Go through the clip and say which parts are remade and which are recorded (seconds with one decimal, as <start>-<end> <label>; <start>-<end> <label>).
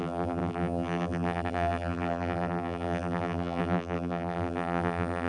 0.0-5.3 remade